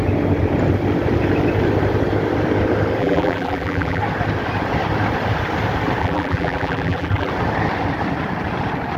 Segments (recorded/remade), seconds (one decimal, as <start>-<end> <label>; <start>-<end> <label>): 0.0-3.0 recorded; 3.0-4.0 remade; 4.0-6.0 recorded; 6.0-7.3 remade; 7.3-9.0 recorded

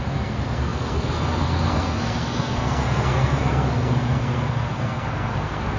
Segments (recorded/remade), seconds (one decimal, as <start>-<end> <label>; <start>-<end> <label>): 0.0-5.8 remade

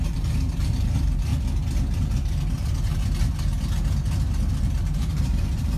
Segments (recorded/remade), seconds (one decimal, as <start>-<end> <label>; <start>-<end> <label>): 0.0-1.3 remade; 1.3-4.6 recorded; 4.6-5.8 remade